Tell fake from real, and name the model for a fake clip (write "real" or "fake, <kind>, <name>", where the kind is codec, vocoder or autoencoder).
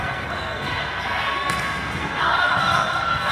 fake, codec, SNAC